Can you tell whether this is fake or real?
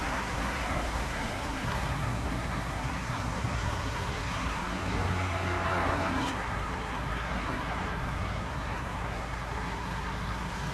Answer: fake